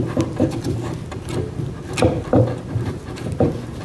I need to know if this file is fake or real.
real